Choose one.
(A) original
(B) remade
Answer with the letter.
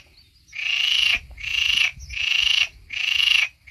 A